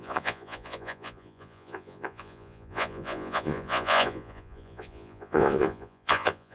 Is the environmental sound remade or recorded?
remade